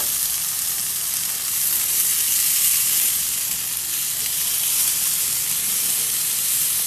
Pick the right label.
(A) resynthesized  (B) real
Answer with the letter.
B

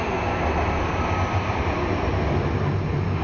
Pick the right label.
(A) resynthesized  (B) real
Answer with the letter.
B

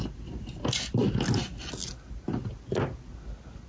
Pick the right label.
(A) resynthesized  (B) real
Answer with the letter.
B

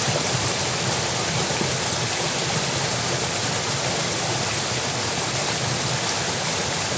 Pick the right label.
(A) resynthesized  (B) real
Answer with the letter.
B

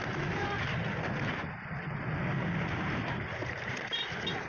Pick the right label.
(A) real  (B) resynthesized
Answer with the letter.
A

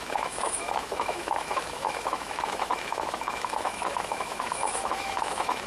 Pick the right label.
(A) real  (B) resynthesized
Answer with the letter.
B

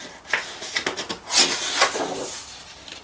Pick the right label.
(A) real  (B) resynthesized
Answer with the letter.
A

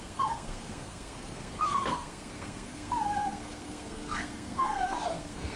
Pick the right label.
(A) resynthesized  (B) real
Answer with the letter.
A